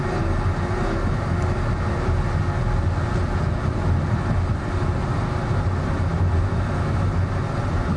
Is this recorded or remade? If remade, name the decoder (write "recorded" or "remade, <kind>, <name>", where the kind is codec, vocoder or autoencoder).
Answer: recorded